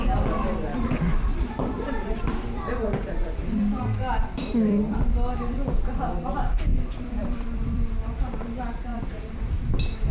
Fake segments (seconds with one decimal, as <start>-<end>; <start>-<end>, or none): 1.3-5.9; 6.7-7.9; 8.9-9.5